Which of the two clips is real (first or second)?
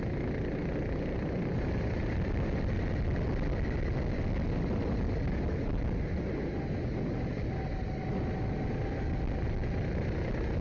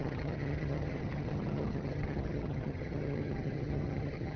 first